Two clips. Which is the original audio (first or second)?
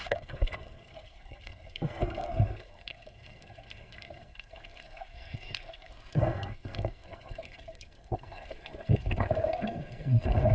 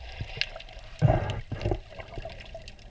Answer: second